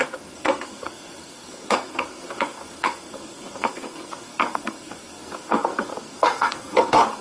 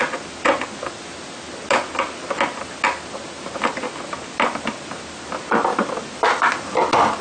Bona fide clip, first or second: second